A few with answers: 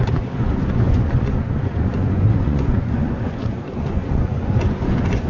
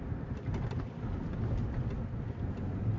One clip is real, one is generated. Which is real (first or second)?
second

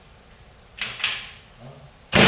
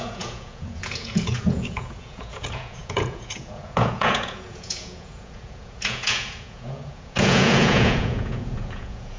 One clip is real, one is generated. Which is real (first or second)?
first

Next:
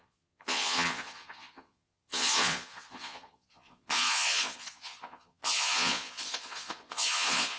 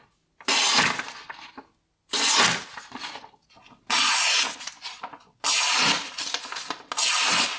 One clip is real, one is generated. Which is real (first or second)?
second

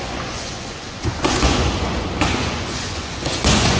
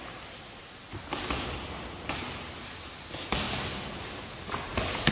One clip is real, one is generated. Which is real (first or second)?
second